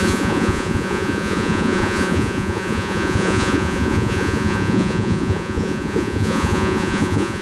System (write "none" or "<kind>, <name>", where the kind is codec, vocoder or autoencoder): vocoder, Vocos